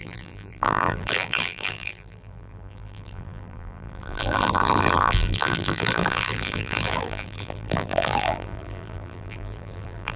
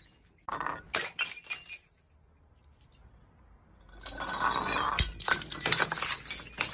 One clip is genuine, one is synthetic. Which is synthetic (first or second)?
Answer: first